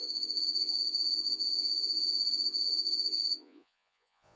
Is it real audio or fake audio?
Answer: fake